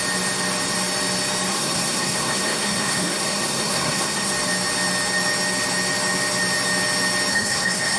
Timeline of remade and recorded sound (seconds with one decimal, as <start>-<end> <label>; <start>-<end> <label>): 0.0-1.5 recorded; 1.5-4.3 remade; 4.3-7.3 recorded; 7.3-8.0 remade